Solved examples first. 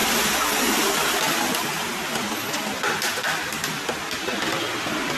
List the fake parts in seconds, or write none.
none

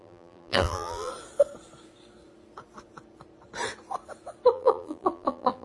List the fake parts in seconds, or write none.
0.0-1.1; 4.5-5.6

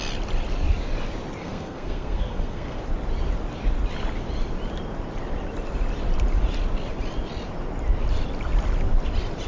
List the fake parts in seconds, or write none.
1.4-2.8

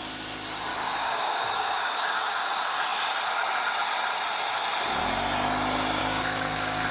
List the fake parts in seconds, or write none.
0.7-2.4; 6.0-6.9

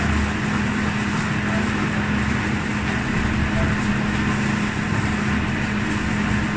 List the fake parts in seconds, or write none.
none

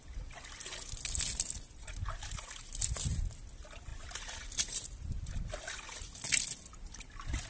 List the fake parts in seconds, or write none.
none

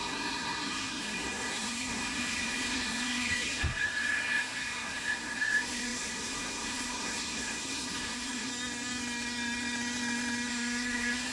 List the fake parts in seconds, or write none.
0.0-8.5; 10.5-11.3

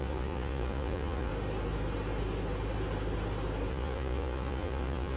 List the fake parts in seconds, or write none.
0.0-1.3; 3.7-5.2